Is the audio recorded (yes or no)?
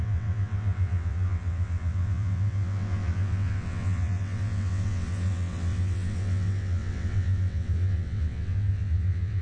no